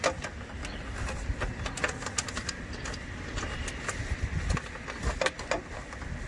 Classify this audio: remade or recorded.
recorded